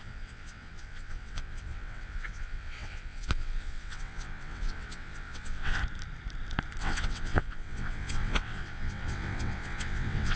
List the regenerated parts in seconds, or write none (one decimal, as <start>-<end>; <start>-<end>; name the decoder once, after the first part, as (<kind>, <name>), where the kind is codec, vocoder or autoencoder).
0.0-5.8 (vocoder, WaveNeXt); 6.8-10.4